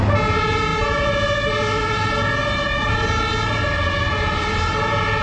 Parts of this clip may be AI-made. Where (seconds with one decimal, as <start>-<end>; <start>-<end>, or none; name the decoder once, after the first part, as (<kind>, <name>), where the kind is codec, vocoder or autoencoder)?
none